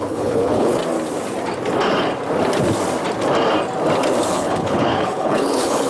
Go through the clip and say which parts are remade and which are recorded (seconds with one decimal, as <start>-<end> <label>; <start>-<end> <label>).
0.0-0.8 remade; 0.8-4.3 recorded; 4.3-5.9 remade